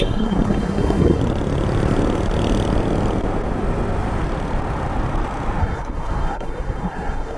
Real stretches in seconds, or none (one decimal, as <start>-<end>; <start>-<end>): 1.2-5.6